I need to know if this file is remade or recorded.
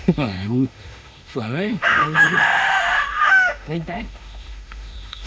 remade